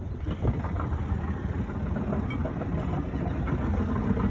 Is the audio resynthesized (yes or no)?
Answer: no